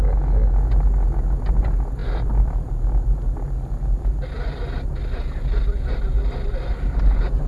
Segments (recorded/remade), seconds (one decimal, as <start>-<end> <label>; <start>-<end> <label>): 0.0-7.5 recorded